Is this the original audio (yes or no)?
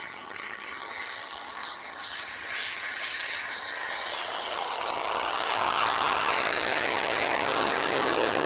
no